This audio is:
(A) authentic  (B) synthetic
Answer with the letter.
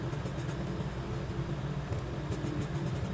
A